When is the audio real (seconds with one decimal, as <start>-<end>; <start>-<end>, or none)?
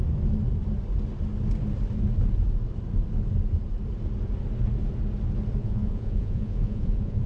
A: 0.0-5.6